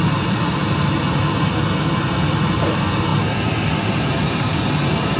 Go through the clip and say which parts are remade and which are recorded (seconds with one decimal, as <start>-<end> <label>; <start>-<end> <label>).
0.0-0.6 remade; 0.6-2.3 recorded; 2.3-5.2 remade